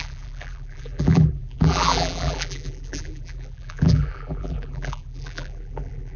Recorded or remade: remade